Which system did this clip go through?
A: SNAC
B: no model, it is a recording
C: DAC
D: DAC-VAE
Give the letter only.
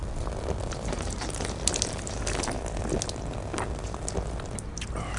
B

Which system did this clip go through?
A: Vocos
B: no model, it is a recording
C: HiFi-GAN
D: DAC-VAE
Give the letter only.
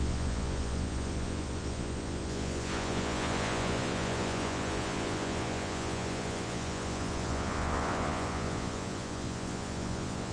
A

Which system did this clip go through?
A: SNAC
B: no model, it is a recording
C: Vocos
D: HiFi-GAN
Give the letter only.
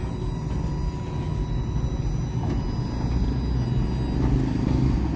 B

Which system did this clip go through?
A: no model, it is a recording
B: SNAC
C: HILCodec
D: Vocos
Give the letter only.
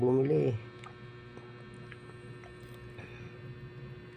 A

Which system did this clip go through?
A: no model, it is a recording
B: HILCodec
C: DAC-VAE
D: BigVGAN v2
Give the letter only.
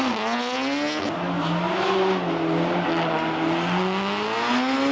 A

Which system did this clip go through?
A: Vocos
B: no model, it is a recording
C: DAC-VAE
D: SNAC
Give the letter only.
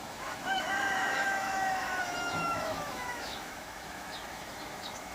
C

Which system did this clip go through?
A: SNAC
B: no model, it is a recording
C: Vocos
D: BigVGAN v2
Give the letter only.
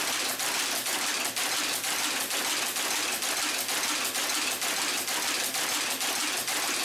B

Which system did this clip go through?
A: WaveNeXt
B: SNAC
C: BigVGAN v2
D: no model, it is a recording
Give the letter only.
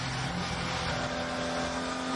D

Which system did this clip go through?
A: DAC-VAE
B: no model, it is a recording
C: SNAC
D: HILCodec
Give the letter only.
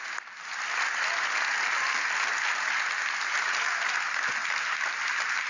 B